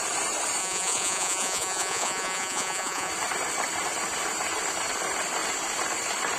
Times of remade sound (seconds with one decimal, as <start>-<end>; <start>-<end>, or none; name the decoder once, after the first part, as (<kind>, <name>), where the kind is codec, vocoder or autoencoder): 0.6-3.1 (vocoder, Vocos)